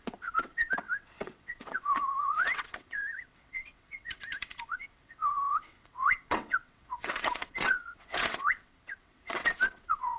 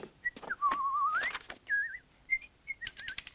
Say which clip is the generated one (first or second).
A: first